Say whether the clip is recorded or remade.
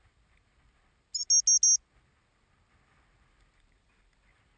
recorded